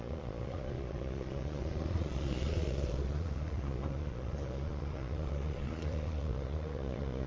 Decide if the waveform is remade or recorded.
remade